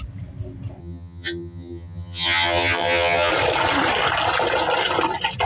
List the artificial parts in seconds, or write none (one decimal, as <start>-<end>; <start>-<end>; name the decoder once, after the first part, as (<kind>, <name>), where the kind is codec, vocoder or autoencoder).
0.8-3.3 (vocoder, HiFi-GAN)